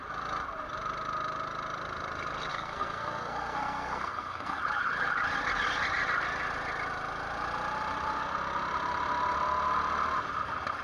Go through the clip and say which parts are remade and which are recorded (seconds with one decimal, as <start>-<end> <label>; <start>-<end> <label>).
0.0-2.5 recorded; 2.5-4.6 remade; 4.6-10.8 recorded